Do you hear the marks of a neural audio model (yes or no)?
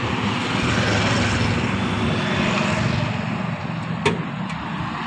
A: no